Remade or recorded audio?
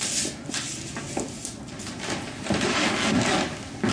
recorded